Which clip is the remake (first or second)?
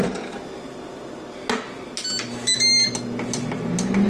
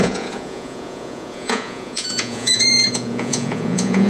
second